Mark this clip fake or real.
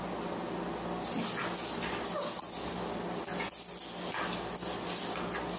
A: real